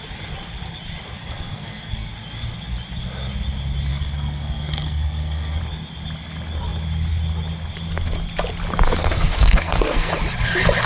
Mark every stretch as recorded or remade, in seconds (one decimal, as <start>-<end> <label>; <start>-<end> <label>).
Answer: 0.0-1.2 recorded; 1.2-2.1 remade; 2.1-3.9 recorded; 3.9-5.6 remade; 5.6-9.0 recorded; 9.0-10.1 remade; 10.1-10.9 recorded